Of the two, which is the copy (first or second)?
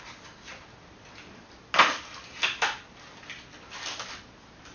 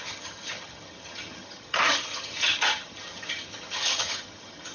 second